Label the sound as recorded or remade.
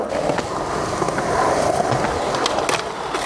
recorded